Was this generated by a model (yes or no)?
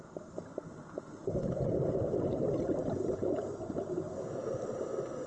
no